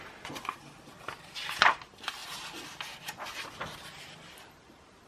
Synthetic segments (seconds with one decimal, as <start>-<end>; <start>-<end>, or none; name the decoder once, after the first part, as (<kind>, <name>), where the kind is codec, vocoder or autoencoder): 2.2-3.0 (vocoder, BigVGAN v2)